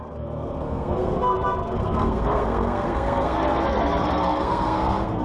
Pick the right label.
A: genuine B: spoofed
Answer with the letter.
B